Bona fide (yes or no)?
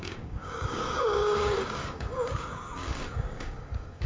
no